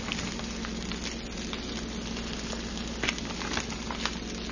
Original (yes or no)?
yes